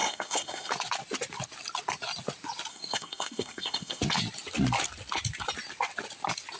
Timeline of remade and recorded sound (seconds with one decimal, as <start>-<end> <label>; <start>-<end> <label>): 0.0-0.7 remade; 0.7-2.7 recorded; 2.7-4.0 remade; 4.0-6.6 recorded